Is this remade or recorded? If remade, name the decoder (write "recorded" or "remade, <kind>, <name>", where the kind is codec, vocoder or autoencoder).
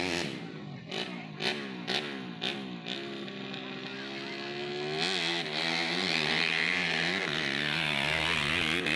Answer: recorded